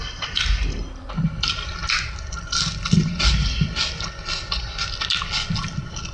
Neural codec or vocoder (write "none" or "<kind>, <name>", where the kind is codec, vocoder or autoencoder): none